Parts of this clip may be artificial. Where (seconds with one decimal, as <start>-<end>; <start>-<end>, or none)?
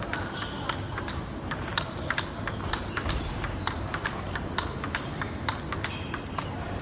1.7-5.2